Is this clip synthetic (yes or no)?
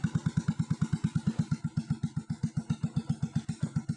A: no